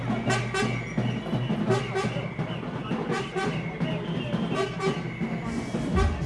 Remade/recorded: recorded